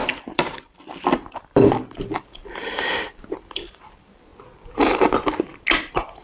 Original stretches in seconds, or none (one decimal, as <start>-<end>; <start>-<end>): 4.3-5.8